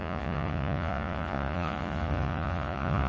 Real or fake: fake